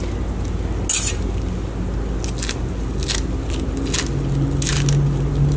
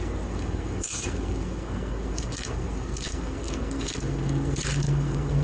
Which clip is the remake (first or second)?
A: second